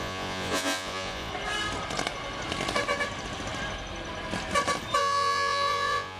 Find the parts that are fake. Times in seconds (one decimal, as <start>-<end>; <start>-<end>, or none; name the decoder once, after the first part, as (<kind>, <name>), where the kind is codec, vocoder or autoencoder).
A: 0.0-1.3 (vocoder, Vocos); 5.0-6.2